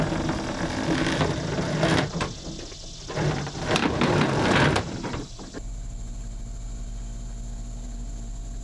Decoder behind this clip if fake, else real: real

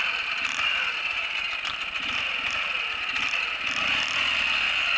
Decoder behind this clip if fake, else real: real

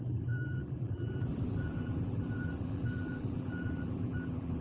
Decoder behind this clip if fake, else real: fake, vocoder, BigVGAN v2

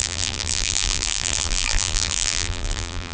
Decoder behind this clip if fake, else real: fake, vocoder, BigVGAN v2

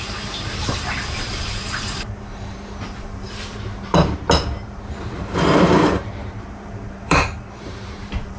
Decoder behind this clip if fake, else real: fake, vocoder, BigVGAN v2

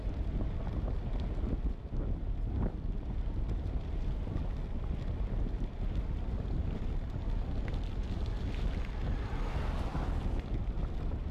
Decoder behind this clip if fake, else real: real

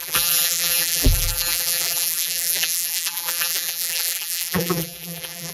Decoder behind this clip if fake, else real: fake, vocoder, BigVGAN v2